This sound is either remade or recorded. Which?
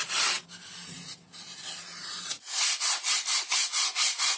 recorded